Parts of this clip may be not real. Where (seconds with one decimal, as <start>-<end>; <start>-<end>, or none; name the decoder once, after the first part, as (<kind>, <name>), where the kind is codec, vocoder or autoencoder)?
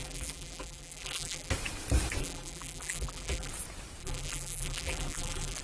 0.0-1.5 (vocoder, BigVGAN v2); 2.2-3.5; 4.0-5.6